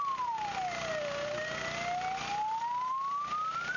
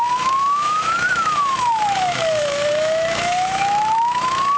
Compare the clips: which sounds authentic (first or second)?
first